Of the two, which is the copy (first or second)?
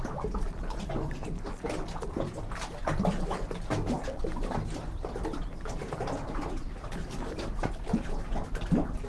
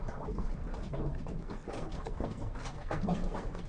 second